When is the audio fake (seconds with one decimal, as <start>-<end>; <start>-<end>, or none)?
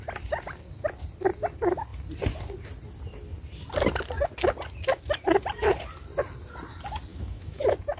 7.1-7.6